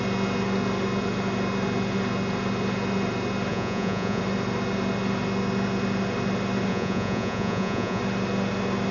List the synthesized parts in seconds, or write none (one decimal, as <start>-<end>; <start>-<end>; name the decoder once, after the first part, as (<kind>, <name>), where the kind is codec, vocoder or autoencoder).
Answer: 3.5-4.2 (vocoder, Vocos); 6.7-8.0